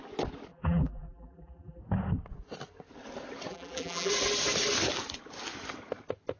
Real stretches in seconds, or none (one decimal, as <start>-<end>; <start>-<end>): 0.0-0.5; 1.8-3.5; 4.1-6.4